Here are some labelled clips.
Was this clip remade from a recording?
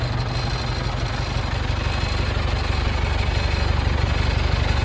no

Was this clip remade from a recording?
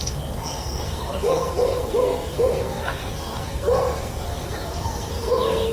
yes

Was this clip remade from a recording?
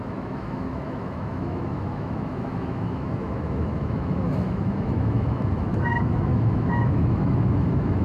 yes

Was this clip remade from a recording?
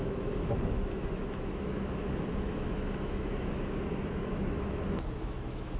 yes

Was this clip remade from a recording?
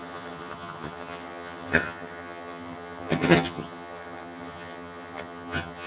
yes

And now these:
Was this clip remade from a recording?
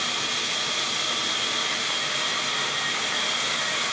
no